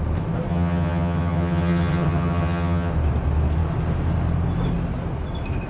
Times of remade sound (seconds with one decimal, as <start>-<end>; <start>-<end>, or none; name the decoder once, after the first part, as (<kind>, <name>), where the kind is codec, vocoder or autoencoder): 0.5-2.9 (vocoder, HiFi-GAN)